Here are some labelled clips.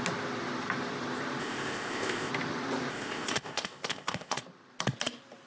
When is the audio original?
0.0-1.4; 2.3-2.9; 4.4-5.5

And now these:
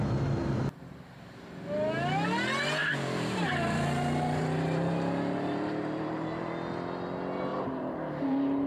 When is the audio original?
0.0-2.8; 6.5-7.5; 8.1-8.7

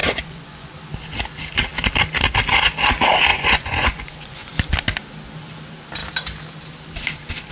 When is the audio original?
0.7-3.3; 4.6-7.5

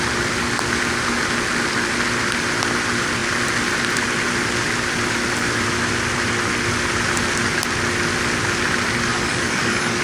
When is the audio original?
0.0-9.1

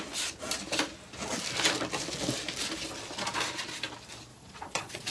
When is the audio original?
0.0-4.3